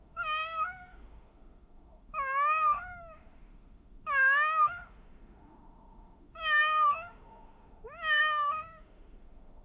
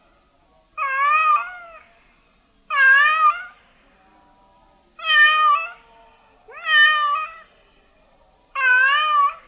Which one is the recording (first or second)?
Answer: second